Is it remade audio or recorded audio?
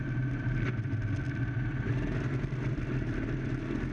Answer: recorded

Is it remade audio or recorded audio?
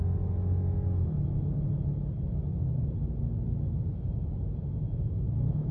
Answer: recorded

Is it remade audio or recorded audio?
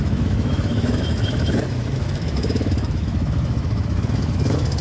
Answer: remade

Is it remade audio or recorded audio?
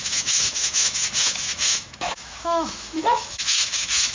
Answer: remade